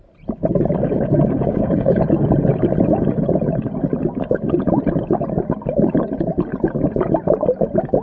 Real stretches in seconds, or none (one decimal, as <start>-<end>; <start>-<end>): 0.0-0.8; 2.0-8.0